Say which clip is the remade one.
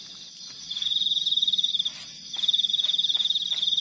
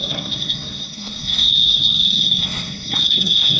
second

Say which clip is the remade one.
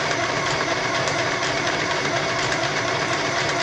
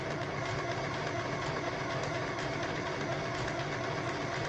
first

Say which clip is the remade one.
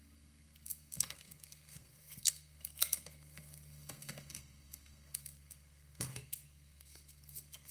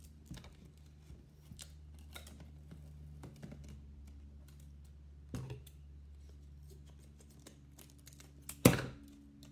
first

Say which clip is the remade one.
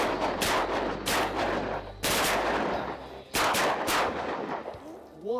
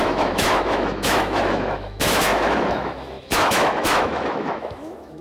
second